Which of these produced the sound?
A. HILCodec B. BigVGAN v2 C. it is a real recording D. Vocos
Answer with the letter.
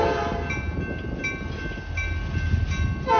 C